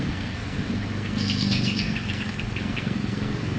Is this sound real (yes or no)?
no